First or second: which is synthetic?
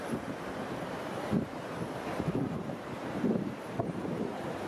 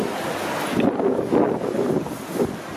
first